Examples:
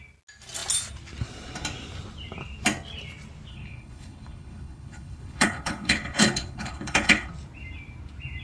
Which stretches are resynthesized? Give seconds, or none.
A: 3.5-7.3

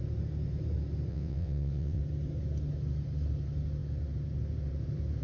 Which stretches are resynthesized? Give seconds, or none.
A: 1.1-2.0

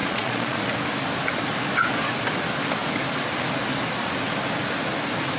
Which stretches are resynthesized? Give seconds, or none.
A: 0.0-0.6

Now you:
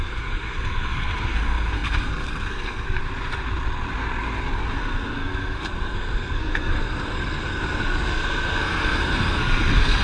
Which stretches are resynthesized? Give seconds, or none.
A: 0.0-3.0; 4.8-10.0

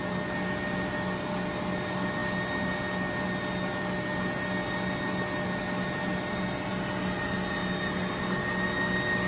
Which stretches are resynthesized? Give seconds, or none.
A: none

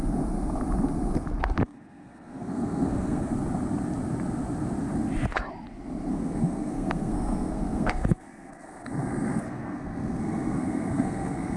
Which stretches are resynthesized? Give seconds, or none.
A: 1.6-3.3; 6.1-11.6

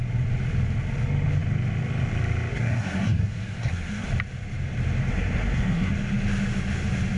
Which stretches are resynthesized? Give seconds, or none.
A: 2.5-4.1; 5.1-5.9